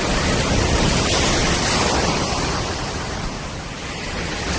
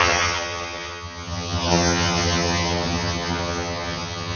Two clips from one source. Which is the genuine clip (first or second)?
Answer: first